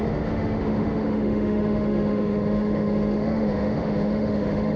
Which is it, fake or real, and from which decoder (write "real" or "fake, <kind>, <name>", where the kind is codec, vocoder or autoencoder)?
fake, autoencoder, DAC-VAE